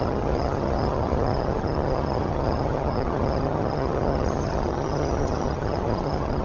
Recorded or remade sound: remade